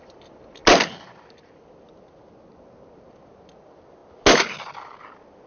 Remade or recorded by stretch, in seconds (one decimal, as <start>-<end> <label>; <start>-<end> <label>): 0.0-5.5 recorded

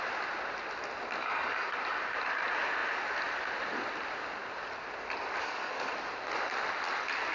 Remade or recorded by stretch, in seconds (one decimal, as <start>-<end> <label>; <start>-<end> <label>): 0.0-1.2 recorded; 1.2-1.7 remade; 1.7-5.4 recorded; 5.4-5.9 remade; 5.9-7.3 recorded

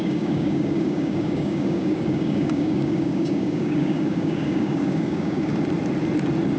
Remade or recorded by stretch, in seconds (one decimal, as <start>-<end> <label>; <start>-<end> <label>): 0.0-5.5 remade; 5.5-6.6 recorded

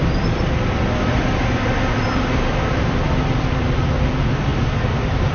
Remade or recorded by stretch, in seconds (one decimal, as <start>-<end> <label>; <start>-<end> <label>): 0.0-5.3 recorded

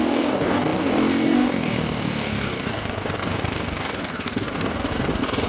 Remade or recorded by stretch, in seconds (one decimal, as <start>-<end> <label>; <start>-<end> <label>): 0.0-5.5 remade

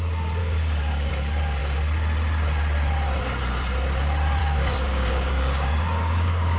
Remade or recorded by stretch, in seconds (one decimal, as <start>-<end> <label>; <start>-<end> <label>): 0.0-0.4 recorded; 0.4-1.1 remade; 1.1-4.4 recorded; 4.4-6.6 remade